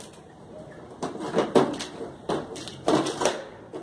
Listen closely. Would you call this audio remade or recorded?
remade